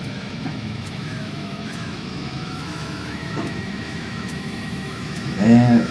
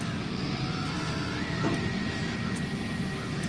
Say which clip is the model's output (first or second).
first